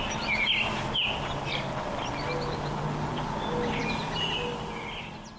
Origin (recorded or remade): recorded